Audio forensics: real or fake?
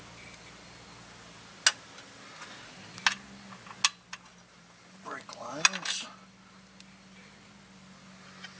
real